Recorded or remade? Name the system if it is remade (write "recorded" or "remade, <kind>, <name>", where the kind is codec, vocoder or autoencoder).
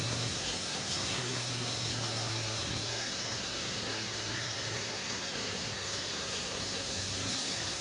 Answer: remade, codec, SNAC